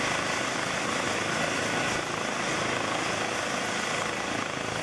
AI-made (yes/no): no